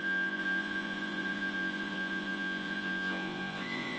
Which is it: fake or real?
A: fake